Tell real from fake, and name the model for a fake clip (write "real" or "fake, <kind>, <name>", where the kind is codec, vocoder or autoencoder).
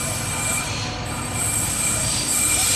real